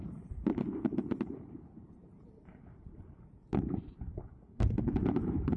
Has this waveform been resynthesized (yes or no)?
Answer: yes